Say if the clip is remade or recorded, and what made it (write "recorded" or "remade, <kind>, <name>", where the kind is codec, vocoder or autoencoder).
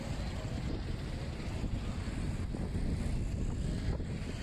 recorded